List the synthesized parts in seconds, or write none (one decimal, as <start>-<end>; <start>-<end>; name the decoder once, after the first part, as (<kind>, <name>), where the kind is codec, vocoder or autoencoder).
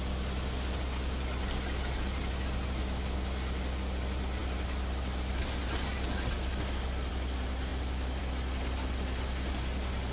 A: none